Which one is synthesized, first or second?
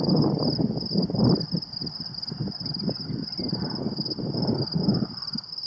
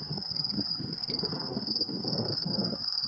second